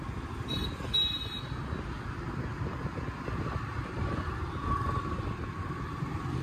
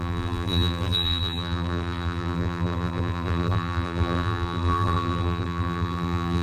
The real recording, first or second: first